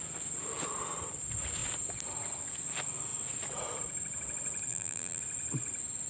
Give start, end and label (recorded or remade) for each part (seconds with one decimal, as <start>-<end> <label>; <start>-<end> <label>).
0.0-4.7 recorded; 4.7-5.2 remade; 5.2-6.1 recorded